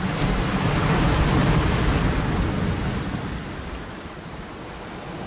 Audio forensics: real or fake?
real